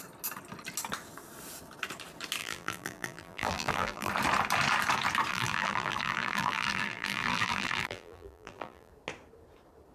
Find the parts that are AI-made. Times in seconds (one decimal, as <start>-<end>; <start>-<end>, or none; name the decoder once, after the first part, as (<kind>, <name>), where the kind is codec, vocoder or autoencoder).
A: 2.4-4.1 (vocoder, BigVGAN v2); 5.3-8.9